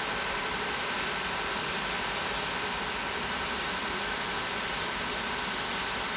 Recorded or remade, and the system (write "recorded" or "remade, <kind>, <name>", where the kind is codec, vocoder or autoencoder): recorded